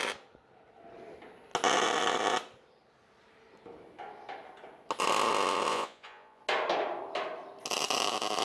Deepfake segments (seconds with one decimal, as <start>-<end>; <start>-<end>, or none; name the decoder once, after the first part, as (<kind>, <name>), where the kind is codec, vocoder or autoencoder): 5.7-6.4 (vocoder, Vocos)